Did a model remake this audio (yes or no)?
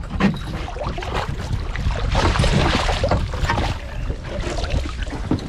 no